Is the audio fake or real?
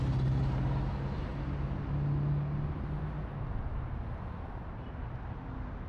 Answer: real